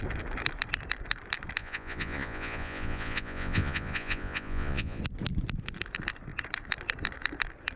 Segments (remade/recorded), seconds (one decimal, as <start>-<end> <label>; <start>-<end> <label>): 0.0-1.6 recorded; 1.6-5.0 remade; 5.0-7.8 recorded